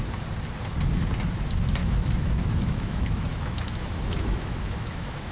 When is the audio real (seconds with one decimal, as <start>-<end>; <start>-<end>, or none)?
0.0-1.8